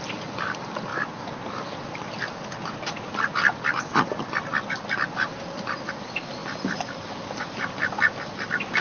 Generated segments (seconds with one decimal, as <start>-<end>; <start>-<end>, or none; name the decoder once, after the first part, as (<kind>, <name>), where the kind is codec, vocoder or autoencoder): none